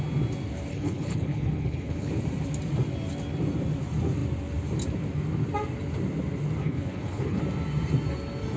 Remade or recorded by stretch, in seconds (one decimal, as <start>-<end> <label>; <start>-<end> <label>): 0.0-0.7 recorded; 0.7-2.1 remade; 2.1-6.6 recorded; 6.6-7.4 remade; 7.4-8.6 recorded